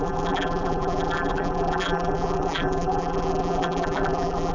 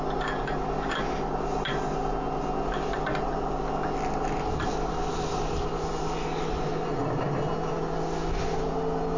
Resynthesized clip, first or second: first